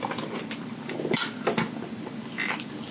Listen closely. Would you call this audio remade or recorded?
recorded